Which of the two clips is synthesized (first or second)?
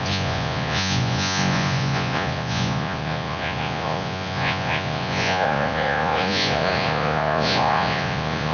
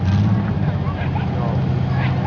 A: first